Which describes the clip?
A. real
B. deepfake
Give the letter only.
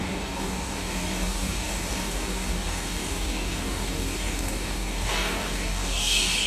B